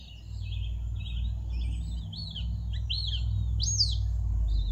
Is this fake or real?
real